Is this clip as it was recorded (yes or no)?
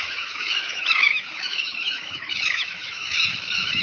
no